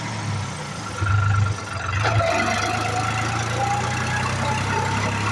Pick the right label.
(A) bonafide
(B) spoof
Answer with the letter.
A